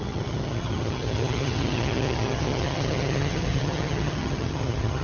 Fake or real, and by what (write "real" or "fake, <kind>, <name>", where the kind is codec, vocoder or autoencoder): fake, vocoder, HiFi-GAN